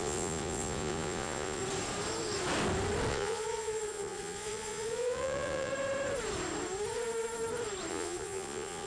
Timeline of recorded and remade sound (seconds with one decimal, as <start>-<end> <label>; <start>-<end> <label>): 0.0-1.6 remade; 1.6-3.1 recorded; 3.1-5.7 remade; 5.7-7.9 recorded; 7.9-8.9 remade